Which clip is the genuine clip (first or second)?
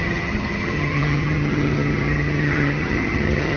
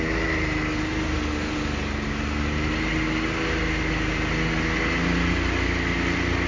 second